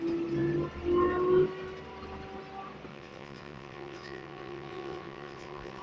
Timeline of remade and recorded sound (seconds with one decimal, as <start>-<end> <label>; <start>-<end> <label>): 0.0-2.9 recorded; 2.9-5.8 remade